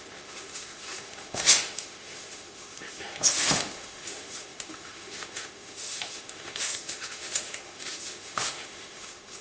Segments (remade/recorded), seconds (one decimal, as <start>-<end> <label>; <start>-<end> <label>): 0.0-9.4 remade